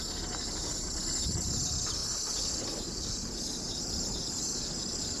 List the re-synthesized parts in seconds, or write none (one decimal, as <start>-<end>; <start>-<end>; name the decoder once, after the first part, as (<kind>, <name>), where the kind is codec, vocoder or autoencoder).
none